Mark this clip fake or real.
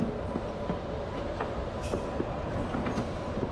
real